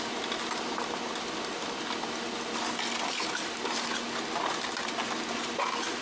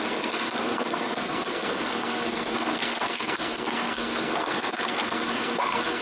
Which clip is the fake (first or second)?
second